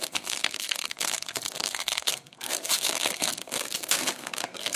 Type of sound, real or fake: fake